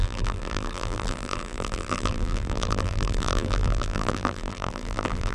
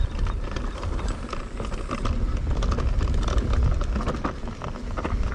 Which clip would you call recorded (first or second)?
second